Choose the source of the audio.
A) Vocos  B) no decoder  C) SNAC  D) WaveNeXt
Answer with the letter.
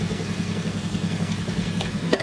C